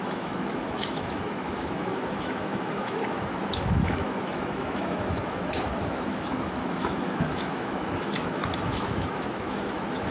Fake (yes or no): yes